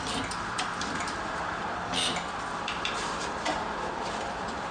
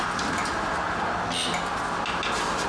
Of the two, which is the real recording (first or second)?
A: second